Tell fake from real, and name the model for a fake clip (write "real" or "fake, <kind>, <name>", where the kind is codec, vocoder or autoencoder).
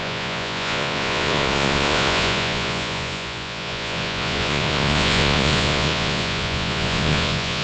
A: fake, vocoder, Vocos